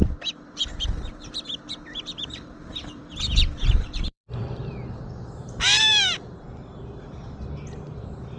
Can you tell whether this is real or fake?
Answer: fake